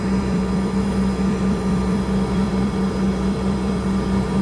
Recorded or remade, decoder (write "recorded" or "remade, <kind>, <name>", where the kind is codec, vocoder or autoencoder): remade, vocoder, BigVGAN v2